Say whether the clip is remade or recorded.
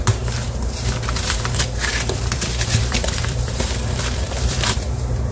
remade